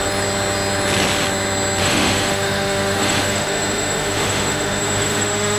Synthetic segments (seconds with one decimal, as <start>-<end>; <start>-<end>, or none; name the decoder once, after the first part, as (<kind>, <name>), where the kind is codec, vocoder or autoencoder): 1.8-5.6 (autoencoder, DAC-VAE)